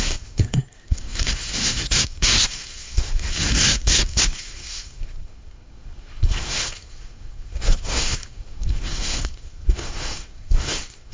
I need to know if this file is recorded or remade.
remade